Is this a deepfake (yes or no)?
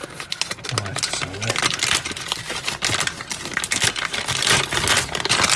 no